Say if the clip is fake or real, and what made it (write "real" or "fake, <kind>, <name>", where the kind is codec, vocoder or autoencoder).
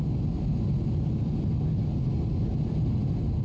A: real